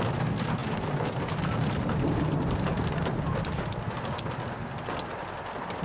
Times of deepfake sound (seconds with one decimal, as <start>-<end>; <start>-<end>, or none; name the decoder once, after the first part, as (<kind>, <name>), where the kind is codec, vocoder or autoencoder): 0.6-3.6 (vocoder, BigVGAN v2)